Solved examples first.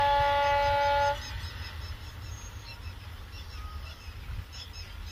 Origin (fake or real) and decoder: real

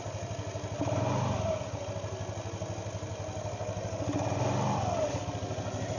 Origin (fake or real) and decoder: real